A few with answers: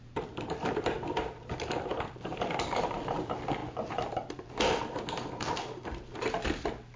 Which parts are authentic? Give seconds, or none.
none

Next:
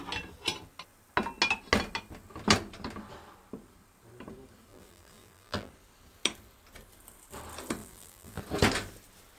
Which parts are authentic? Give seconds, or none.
0.0-4.7; 5.7-7.8; 8.4-9.4

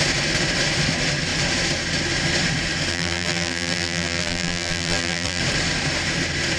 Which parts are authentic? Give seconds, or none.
0.0-2.9; 5.4-6.6